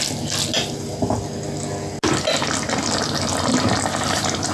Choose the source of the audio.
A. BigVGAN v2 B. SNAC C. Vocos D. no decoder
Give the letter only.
D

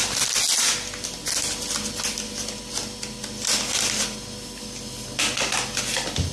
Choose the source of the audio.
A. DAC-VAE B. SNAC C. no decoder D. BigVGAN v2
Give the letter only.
C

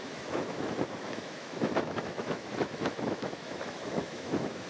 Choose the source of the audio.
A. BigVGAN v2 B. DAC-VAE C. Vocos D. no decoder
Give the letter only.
B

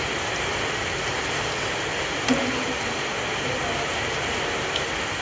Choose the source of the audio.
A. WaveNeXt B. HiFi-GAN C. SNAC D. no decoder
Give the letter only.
D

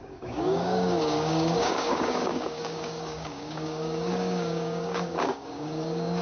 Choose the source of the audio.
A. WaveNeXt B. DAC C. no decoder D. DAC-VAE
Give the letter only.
B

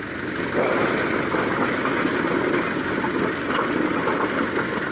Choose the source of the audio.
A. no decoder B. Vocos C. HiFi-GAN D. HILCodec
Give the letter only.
A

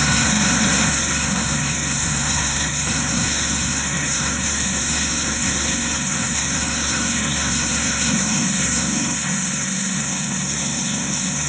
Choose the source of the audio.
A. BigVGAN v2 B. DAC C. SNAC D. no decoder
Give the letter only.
C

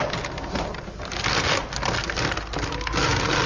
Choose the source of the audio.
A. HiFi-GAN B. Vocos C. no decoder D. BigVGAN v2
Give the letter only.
C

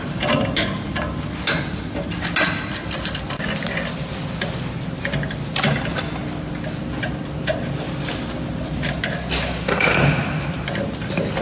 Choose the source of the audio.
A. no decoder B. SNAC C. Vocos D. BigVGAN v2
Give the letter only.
A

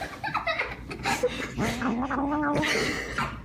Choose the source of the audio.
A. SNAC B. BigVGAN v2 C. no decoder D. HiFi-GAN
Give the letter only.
C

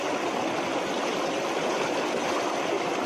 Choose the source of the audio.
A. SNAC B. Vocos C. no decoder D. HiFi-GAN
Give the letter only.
C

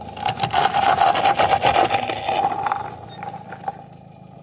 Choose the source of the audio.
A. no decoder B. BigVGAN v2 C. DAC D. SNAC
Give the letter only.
A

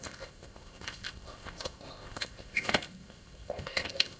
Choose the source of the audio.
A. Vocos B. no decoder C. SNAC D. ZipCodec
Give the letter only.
D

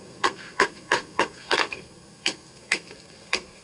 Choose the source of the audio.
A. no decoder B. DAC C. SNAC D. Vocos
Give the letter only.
C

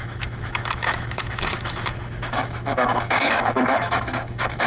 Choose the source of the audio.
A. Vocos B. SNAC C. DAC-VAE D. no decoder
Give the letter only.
C